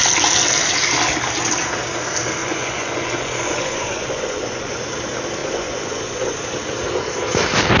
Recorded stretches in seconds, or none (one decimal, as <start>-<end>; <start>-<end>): 0.0-2.4; 4.7-5.4; 6.4-7.8